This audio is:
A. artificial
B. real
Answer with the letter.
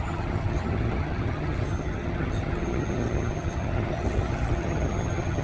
A